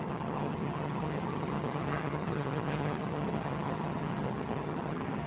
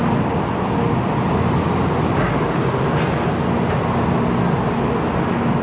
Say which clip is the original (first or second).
second